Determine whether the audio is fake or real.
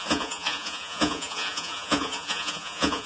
fake